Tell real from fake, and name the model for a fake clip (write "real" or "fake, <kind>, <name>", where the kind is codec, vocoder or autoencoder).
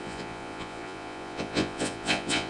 fake, vocoder, Vocos